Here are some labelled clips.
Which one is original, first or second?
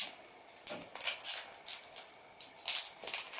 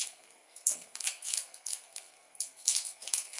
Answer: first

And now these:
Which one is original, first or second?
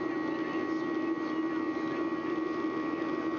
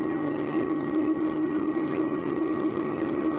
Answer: first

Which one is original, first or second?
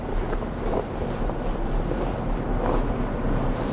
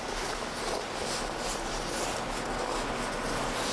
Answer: second